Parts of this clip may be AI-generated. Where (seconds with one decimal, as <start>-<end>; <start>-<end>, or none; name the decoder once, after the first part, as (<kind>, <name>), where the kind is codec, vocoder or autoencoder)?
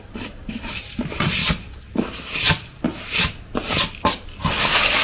0.0-1.4 (vocoder, BigVGAN v2); 4.4-5.0